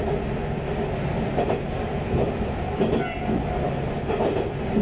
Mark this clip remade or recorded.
recorded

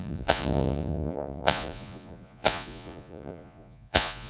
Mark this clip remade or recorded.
remade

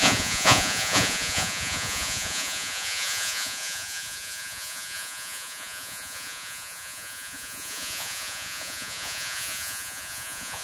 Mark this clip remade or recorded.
remade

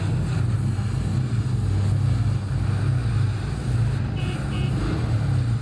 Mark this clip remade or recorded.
recorded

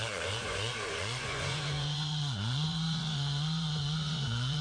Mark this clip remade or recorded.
remade